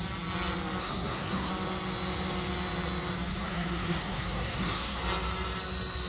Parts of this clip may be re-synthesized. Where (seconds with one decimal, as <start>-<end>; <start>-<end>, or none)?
0.8-1.5; 3.3-5.0